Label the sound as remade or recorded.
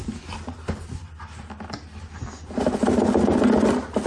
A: recorded